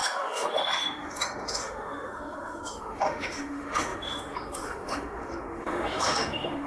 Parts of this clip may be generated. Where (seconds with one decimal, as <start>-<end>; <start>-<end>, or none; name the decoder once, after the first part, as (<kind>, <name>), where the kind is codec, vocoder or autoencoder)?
0.0-6.7 (autoencoder, DAC-VAE)